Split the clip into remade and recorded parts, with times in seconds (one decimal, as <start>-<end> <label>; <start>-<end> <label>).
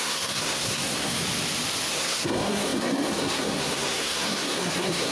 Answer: 0.0-1.2 remade; 1.2-1.9 recorded; 1.9-5.1 remade